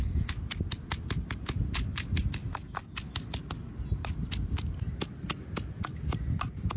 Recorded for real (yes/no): yes